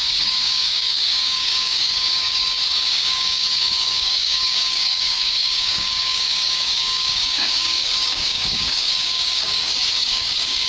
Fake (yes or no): yes